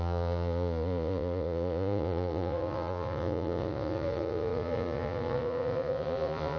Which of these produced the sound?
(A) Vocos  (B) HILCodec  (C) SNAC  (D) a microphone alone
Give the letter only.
A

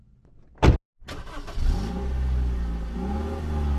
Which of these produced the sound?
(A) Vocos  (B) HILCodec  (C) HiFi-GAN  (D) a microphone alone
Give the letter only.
D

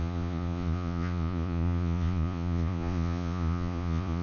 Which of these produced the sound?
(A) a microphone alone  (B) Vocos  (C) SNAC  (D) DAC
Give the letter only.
B